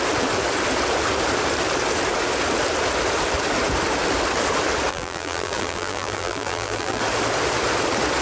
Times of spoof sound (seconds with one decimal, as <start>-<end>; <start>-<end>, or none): 4.9-7.0